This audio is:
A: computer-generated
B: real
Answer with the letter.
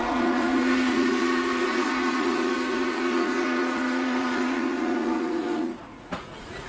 A